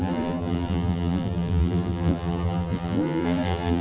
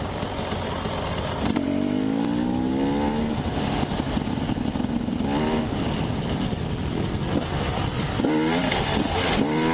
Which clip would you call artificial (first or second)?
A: first